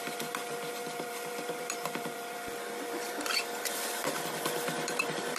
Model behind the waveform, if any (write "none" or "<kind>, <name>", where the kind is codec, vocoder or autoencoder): vocoder, BigVGAN v2